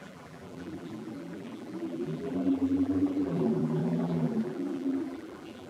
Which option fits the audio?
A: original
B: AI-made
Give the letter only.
B